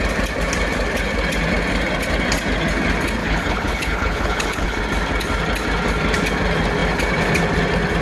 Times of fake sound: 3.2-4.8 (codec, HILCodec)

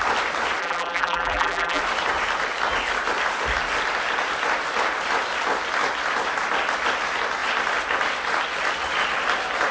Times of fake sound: 0.6-1.8 (vocoder, BigVGAN v2)

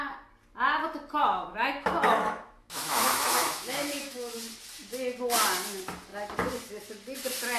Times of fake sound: 1.2-4.3 (autoencoder, DAC-VAE)

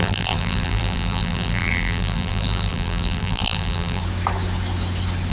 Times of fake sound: 0.0-4.0 (vocoder, BigVGAN v2)

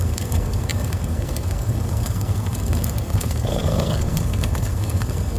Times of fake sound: 0.0-5.4 (codec, SNAC)

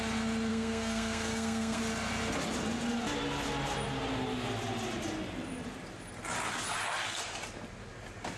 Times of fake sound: 0.5-1.8 (codec, SNAC)

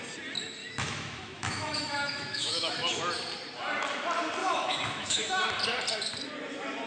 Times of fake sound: 0.6-3.0 (autoencoder, DAC-VAE); 4.4-5.5

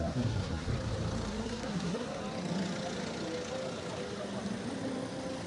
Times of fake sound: 0.0-0.7 (codec, SNAC); 1.3-2.2